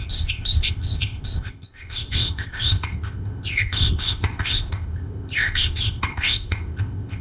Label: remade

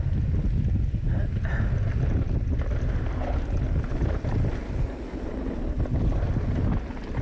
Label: recorded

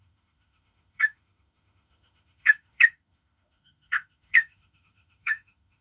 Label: remade